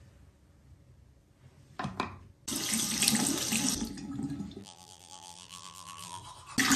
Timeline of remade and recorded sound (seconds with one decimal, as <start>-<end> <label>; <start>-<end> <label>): 0.0-4.6 recorded; 4.6-6.2 remade; 6.2-6.8 recorded